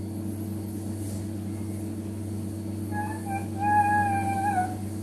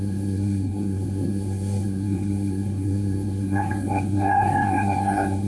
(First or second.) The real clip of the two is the first